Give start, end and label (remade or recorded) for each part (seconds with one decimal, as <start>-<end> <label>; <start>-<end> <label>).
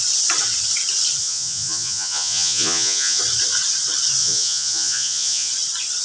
0.0-1.2 recorded; 1.2-3.2 remade; 3.2-4.2 recorded; 4.2-5.5 remade; 5.5-6.0 recorded